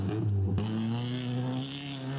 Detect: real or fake real